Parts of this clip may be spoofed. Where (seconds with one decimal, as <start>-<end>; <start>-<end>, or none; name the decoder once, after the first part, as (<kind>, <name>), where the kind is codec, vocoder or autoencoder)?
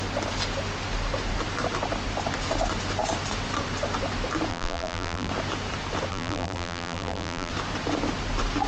4.5-5.3 (vocoder, BigVGAN v2); 6.1-7.5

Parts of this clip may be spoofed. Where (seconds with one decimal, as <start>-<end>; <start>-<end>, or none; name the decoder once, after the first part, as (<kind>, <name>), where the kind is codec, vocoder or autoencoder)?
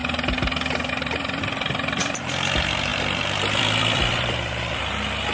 0.9-5.3 (vocoder, BigVGAN v2)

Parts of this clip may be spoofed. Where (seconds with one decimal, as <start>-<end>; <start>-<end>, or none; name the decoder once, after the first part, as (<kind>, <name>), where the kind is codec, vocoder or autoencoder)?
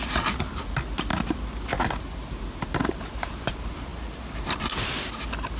none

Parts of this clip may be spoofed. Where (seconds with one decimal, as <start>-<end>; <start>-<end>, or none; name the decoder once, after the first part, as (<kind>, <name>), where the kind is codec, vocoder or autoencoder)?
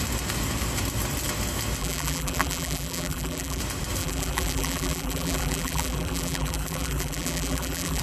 1.8-3.6 (vocoder, BigVGAN v2); 4.0-8.0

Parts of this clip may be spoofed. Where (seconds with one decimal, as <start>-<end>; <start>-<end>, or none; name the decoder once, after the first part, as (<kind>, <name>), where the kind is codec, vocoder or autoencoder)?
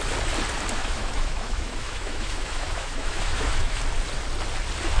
0.8-3.8 (autoencoder, DAC-VAE)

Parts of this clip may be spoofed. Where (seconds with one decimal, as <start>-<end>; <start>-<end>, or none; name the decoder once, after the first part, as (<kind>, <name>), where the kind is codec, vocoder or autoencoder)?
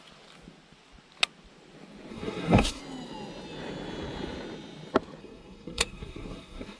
2.1-2.8 (codec, SNAC); 5.2-6.8